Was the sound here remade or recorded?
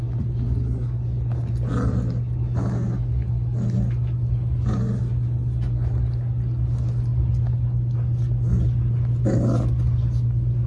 recorded